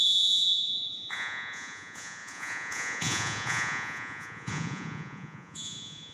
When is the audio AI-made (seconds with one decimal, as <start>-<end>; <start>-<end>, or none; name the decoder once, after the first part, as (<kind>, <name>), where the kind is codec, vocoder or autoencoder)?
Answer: 0.0-6.1 (vocoder, Vocos)

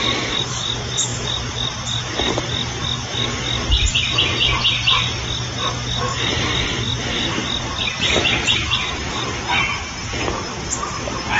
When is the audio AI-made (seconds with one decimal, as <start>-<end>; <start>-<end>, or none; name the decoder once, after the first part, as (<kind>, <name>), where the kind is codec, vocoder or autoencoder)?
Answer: 9.7-10.4 (vocoder, Vocos)

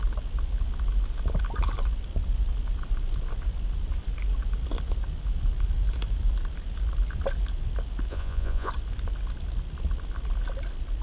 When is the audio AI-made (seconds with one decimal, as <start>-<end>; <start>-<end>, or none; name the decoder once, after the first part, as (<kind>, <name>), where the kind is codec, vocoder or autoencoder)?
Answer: 8.1-8.7 (vocoder, Vocos)

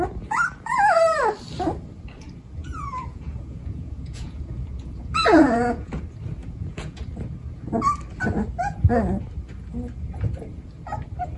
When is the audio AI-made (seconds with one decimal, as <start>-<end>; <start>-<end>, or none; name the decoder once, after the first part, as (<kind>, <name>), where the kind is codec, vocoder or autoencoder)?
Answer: 2.6-6.0 (vocoder, Vocos); 6.4-7.0

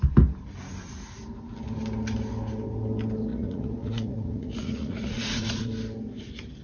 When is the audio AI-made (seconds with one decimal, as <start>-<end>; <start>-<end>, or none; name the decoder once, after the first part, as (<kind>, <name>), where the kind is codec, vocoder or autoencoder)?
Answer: 3.3-5.7 (vocoder, Vocos)

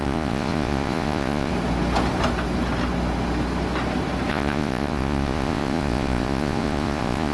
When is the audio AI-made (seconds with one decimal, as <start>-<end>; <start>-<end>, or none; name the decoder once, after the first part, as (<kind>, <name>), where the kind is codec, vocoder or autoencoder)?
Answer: 0.0-1.5 (vocoder, Vocos); 4.3-7.3

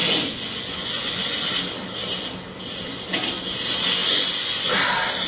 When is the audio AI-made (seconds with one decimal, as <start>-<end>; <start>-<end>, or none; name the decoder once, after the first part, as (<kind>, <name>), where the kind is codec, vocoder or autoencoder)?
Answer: 0.0-1.5 (vocoder, Vocos); 4.0-4.7